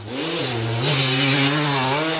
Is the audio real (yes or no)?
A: yes